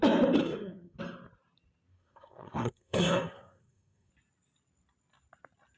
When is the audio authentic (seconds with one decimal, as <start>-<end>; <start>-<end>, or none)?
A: 0.0-0.4; 1.0-1.9; 4.1-5.8